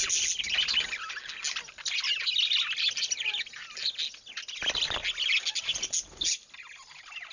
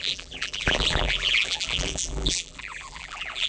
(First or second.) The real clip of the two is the first